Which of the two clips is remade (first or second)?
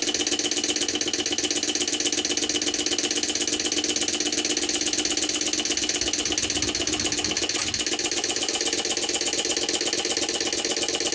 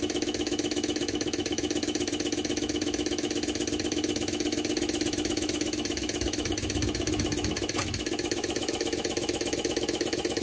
second